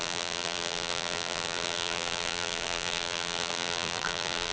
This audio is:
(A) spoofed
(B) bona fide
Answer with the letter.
A